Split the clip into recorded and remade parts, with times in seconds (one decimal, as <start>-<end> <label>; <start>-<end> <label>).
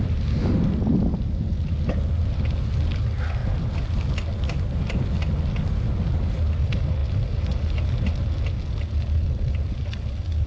0.0-7.0 recorded; 7.0-7.7 remade; 7.7-10.5 recorded